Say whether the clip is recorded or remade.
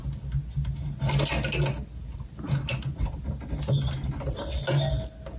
recorded